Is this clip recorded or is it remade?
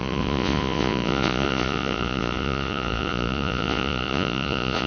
remade